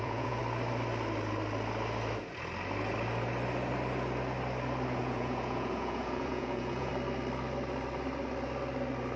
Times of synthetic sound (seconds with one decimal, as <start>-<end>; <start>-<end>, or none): 0.0-0.4; 5.0-6.9

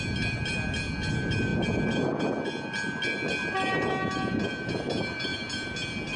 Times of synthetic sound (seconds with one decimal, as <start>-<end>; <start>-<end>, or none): none